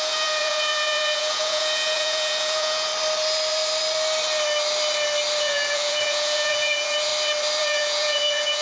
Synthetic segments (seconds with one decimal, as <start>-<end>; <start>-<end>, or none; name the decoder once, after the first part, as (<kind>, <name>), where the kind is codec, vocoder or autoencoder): 0.0-2.9 (vocoder, Vocos); 5.4-7.1; 7.6-8.6